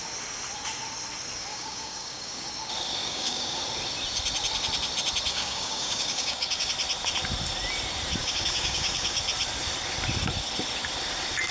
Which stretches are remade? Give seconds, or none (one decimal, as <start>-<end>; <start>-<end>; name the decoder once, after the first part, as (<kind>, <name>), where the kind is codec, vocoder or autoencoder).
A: 1.5-2.5 (codec, DAC); 3.0-3.6; 5.3-6.7; 8.2-9.2